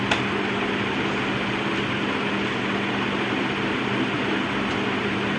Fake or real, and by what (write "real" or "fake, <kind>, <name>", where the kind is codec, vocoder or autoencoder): real